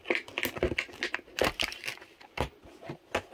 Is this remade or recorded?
recorded